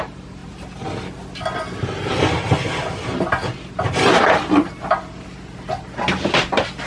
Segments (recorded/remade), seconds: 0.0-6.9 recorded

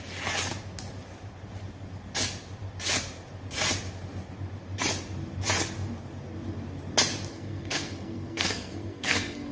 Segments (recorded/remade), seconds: 0.0-7.3 recorded; 7.3-9.5 remade